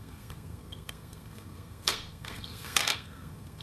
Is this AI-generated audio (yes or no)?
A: yes